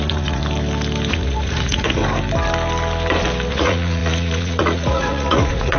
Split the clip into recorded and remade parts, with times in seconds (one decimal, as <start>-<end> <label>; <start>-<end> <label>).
0.0-0.4 remade; 0.4-1.1 recorded; 1.1-2.0 remade; 2.0-3.5 recorded; 3.5-5.8 remade